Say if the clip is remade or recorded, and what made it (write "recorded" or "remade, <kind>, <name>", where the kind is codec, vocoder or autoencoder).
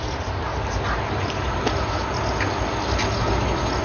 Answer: recorded